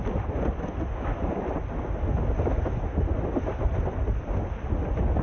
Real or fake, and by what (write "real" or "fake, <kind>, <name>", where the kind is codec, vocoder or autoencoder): real